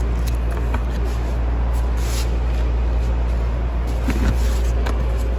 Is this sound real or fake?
real